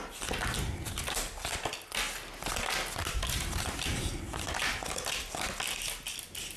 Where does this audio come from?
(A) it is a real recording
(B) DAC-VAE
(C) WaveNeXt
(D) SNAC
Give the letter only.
A